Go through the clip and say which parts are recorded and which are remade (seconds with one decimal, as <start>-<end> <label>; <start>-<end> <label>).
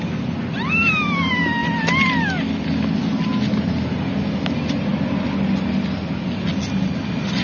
0.0-7.4 recorded